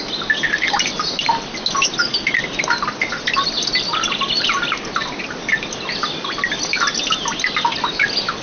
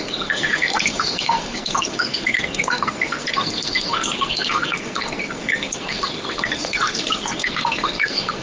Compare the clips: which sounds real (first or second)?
first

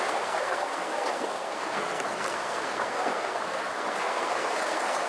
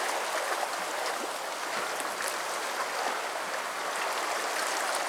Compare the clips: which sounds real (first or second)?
second